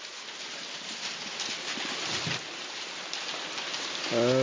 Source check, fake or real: real